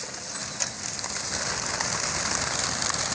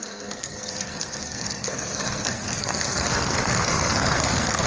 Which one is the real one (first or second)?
first